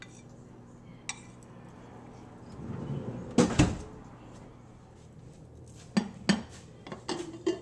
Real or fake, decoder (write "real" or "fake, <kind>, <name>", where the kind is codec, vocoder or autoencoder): real